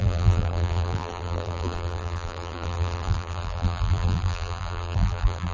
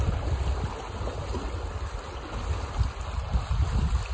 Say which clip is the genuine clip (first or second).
second